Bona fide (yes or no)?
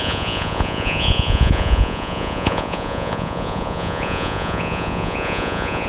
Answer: no